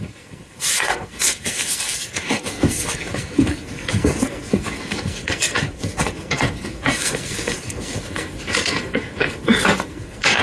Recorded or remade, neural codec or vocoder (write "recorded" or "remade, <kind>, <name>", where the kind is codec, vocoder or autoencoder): remade, codec, SNAC